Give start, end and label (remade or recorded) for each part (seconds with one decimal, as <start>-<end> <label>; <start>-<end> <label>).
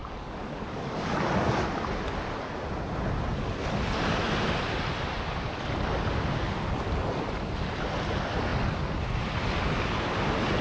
0.0-1.5 remade; 1.5-10.6 recorded